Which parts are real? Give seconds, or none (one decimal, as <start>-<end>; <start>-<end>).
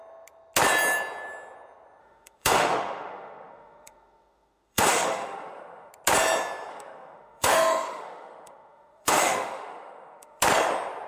0.0-2.0; 5.9-6.7; 10.4-11.1